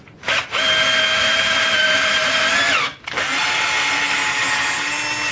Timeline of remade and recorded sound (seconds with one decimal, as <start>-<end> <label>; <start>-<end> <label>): 0.0-1.2 recorded; 1.2-3.5 remade; 3.5-5.3 recorded